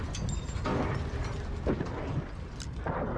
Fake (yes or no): no